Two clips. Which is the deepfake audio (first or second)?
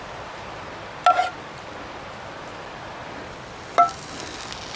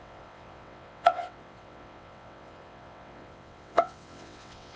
second